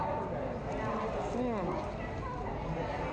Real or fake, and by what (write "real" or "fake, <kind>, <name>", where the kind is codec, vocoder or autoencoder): real